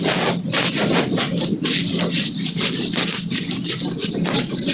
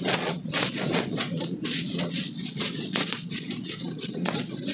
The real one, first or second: first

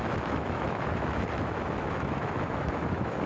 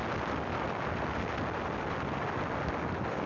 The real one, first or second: second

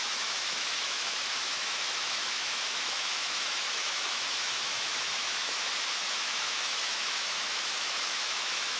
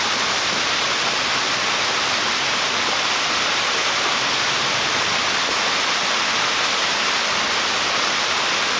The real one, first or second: second